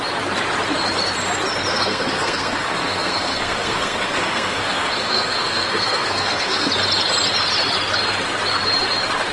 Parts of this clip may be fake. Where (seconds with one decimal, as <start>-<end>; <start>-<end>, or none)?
1.7-6.7